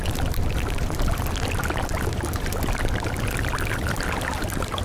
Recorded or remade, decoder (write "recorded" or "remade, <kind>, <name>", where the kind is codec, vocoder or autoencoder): recorded